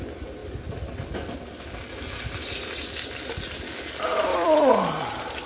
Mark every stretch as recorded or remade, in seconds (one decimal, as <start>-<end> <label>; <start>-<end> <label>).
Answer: 0.0-4.3 recorded; 4.3-4.9 remade; 4.9-5.5 recorded